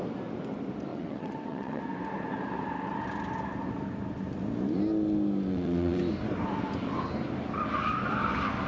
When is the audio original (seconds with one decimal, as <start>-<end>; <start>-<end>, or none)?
0.0-0.9; 1.8-5.5; 6.0-8.7